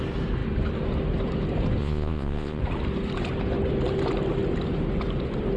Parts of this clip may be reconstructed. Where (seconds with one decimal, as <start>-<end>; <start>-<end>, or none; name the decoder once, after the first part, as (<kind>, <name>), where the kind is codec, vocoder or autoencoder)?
1.8-2.6 (vocoder, Vocos)